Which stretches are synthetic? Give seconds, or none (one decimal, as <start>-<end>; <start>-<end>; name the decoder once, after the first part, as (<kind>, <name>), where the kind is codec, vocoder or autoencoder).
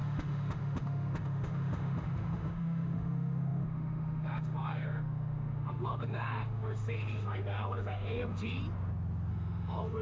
0.0-8.6 (autoencoder, DAC-VAE); 9.3-10.0